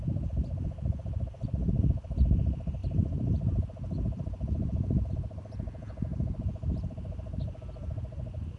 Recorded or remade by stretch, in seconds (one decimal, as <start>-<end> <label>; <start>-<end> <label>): 0.0-2.8 recorded; 2.8-5.1 remade; 5.1-6.1 recorded; 6.1-6.7 remade; 6.7-8.6 recorded